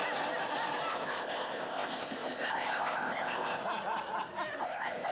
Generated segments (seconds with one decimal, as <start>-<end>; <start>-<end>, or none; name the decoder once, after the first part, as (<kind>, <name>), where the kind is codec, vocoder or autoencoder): 0.9-3.6 (codec, ZipCodec); 4.6-5.1